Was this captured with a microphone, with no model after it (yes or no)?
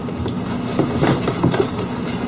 yes